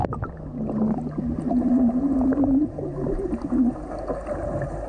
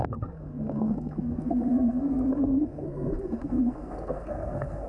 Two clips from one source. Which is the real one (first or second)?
first